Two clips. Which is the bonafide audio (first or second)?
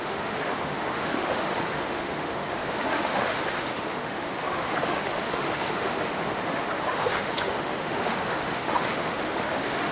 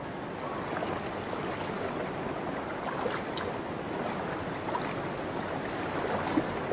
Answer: second